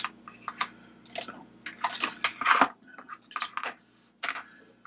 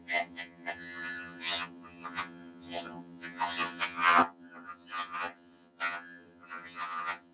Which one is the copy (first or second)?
second